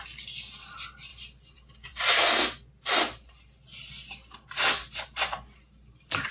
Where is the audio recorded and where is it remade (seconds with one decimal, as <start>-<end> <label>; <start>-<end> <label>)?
0.0-1.1 recorded; 1.1-2.2 remade; 2.2-6.3 recorded